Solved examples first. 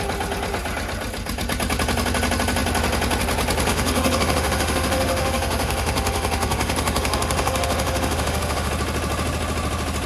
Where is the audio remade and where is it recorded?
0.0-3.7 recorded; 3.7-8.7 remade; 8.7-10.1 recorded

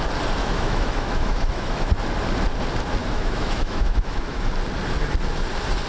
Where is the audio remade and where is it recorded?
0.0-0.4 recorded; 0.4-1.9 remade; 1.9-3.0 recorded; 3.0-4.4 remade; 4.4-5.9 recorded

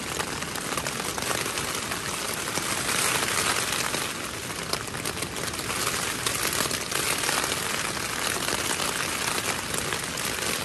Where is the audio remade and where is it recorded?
0.0-10.6 recorded

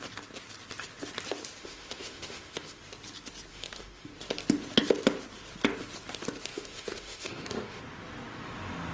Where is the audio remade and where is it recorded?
0.0-1.6 recorded; 1.6-2.8 remade; 2.8-3.5 recorded; 3.5-4.1 remade; 4.1-6.5 recorded; 6.5-7.8 remade; 7.8-8.9 recorded